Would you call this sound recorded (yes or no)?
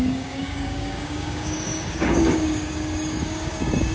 no